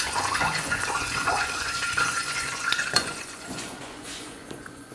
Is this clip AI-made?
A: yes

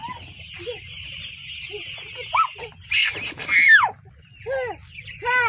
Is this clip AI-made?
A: no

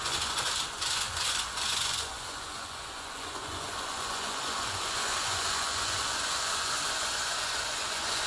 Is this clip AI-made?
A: yes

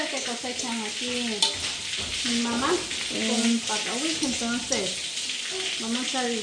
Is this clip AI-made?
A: no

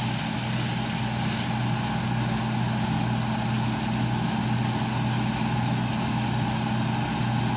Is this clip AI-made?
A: no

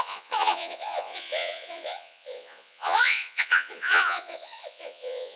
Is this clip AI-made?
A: yes